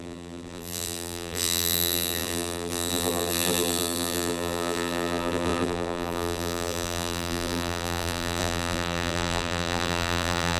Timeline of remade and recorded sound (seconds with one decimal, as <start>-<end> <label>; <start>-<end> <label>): 0.0-10.6 remade